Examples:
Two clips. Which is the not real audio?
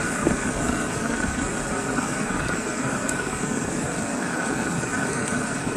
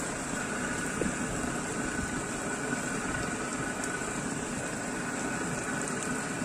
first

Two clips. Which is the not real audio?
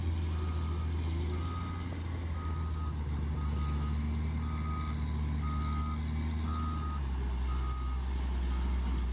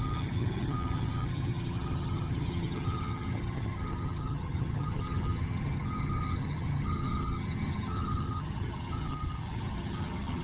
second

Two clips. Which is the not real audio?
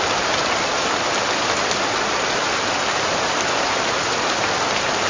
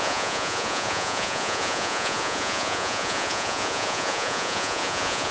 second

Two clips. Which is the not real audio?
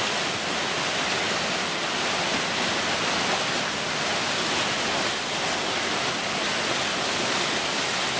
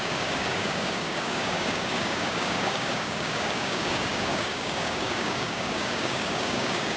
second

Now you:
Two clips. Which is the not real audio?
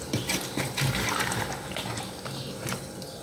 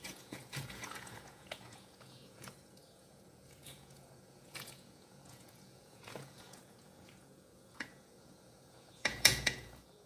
second